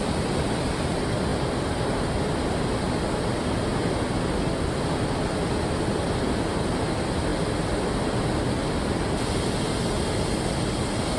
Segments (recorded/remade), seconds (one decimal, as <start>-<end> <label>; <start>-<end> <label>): 0.0-11.2 recorded